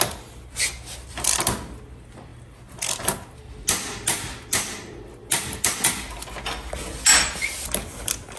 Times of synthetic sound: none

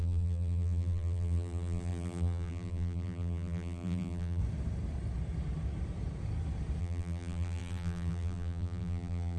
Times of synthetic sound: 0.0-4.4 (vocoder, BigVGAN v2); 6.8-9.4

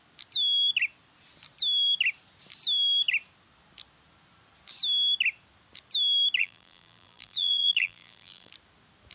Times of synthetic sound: 6.4-8.5 (vocoder, BigVGAN v2)